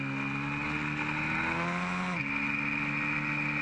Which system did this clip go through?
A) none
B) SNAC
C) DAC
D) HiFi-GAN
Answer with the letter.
A